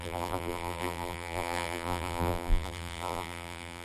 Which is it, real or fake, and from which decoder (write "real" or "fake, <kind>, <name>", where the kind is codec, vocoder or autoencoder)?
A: fake, vocoder, BigVGAN v2